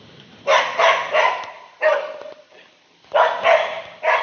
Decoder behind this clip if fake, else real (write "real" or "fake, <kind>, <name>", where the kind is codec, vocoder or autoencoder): real